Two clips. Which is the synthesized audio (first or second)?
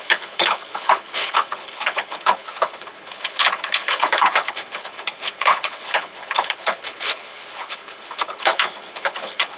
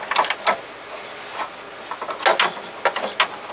first